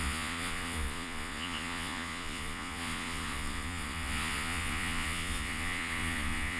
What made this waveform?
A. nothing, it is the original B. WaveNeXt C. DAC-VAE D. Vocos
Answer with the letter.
D